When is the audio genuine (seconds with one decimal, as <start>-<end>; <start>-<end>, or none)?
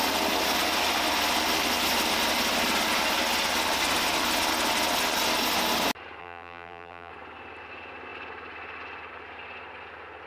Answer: 0.0-6.2; 7.1-10.3